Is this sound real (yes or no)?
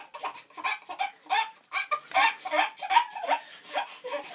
yes